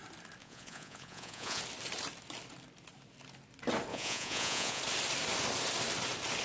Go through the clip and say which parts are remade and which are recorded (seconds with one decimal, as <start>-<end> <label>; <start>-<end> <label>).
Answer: 0.0-0.4 recorded; 0.4-1.6 remade; 1.6-3.9 recorded; 3.9-4.8 remade; 4.8-6.4 recorded